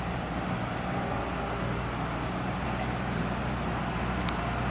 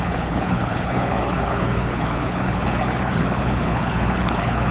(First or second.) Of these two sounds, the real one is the first